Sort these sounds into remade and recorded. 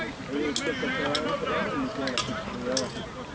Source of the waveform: recorded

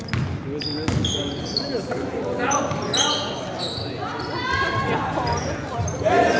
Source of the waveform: recorded